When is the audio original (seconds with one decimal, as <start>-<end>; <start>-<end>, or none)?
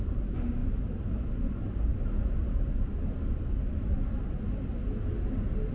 0.0-5.7